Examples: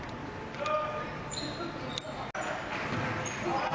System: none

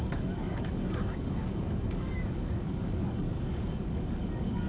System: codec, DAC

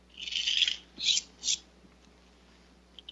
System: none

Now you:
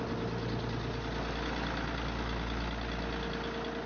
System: none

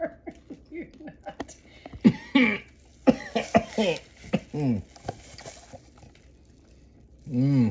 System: none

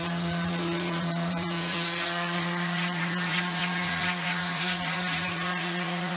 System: vocoder, Vocos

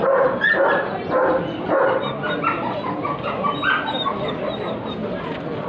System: none